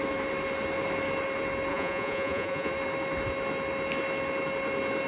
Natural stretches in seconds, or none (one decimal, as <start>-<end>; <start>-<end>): 0.0-1.7; 2.7-5.1